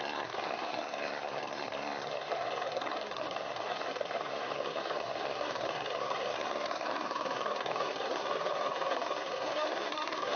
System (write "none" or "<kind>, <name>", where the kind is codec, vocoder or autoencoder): codec, SNAC